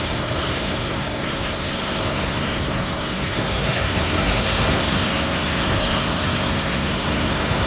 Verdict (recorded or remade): remade